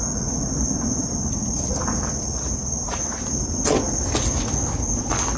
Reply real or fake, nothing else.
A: real